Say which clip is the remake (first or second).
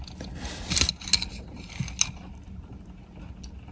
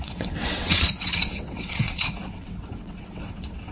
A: second